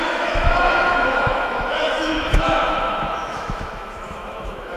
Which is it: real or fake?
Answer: fake